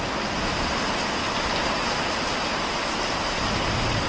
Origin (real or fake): real